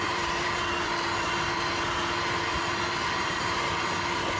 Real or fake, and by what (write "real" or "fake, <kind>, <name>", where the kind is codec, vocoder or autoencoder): fake, vocoder, BigVGAN v2